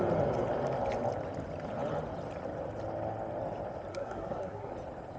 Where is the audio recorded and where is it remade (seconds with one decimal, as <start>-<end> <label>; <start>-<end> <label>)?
0.0-3.9 recorded; 3.9-4.7 remade; 4.7-5.2 recorded